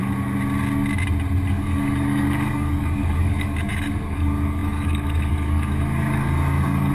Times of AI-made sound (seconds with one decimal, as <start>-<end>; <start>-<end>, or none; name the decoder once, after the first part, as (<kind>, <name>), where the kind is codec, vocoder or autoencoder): 1.5-6.9 (codec, DAC)